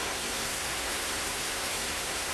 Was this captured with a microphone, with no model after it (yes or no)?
no